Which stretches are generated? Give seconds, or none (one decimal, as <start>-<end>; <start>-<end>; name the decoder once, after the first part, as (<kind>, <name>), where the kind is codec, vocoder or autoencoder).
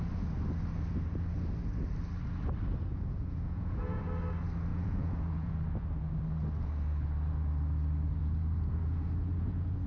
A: 2.9-4.0 (vocoder, Vocos); 4.7-5.5; 8.2-9.9